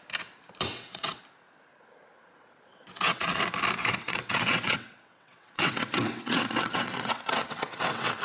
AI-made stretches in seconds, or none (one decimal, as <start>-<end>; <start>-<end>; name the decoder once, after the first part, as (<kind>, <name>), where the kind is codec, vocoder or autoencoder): 0.7-1.2 (vocoder, WaveNeXt); 2.7-3.4; 3.8-8.2